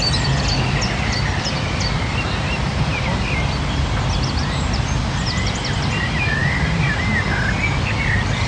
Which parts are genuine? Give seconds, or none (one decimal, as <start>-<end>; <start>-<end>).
0.0-8.5